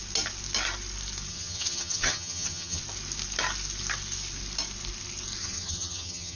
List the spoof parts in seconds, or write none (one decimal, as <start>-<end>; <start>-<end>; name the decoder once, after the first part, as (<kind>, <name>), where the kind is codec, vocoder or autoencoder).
1.3-2.8 (vocoder, HiFi-GAN); 5.4-6.4